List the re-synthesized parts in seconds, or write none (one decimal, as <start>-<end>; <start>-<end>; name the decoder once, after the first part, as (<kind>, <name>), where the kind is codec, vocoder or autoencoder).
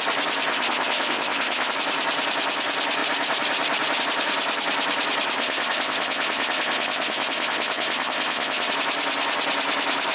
0.5-1.7 (codec, ZipCodec); 5.4-8.7